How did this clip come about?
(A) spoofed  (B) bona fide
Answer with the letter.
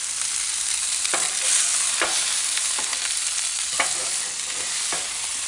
B